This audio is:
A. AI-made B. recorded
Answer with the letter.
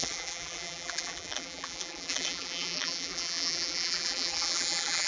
A